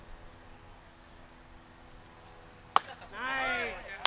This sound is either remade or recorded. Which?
recorded